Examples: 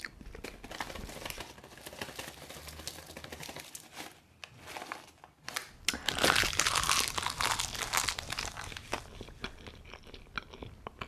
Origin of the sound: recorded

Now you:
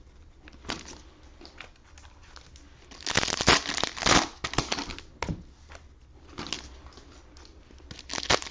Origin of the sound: recorded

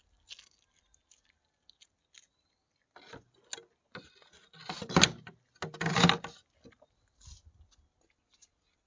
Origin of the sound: recorded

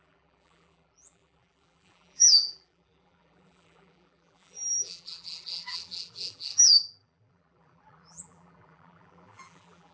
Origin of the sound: remade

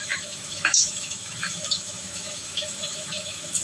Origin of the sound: remade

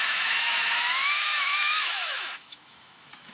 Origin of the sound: remade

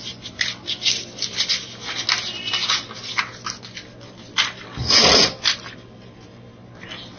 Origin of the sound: recorded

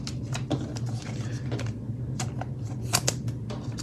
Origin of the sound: recorded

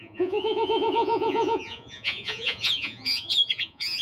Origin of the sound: remade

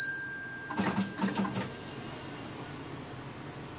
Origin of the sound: recorded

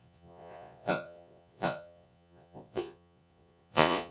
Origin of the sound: remade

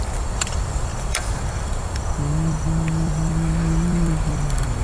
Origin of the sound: remade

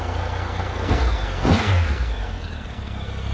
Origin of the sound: remade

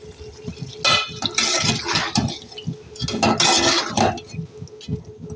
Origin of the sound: recorded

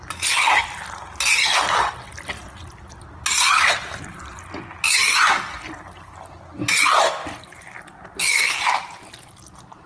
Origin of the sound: recorded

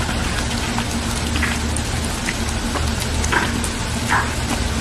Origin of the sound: recorded